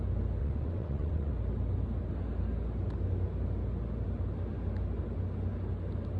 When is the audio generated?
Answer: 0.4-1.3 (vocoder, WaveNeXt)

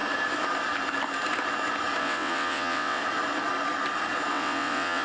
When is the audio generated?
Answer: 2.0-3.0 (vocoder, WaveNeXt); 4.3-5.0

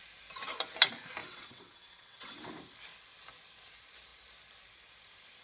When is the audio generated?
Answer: 1.2-2.4 (vocoder, WaveNeXt)

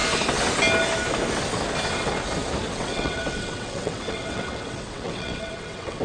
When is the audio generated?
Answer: 2.7-6.0 (vocoder, WaveNeXt)

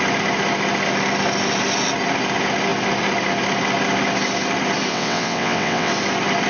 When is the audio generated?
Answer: 4.9-5.9 (vocoder, WaveNeXt)

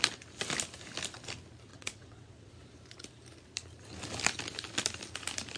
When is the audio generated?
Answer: 1.7-2.5 (vocoder, WaveNeXt)

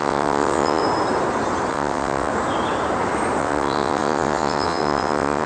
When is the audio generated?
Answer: 0.0-0.8 (vocoder, WaveNeXt); 1.7-2.3; 3.4-5.5

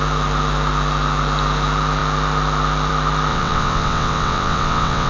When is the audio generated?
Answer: 3.3-5.1 (vocoder, WaveNeXt)